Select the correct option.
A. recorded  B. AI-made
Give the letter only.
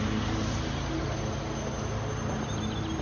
A